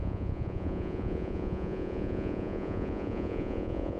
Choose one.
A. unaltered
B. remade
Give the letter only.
B